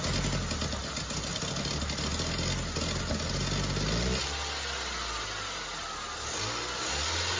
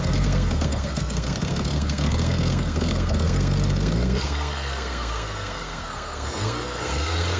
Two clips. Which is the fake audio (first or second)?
second